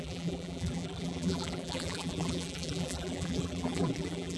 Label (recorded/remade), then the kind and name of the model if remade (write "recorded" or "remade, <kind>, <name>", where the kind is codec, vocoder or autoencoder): remade, vocoder, BigVGAN v2